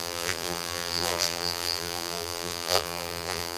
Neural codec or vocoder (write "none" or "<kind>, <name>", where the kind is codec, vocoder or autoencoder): vocoder, BigVGAN v2